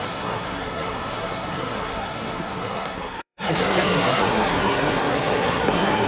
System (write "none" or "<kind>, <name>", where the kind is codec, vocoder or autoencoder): codec, SNAC